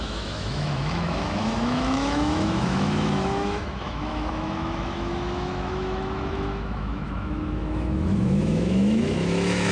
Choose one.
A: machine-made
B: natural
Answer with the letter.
A